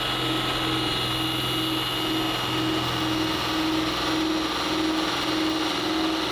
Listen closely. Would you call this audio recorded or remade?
recorded